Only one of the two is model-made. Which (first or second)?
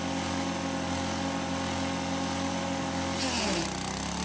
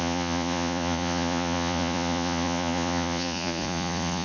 second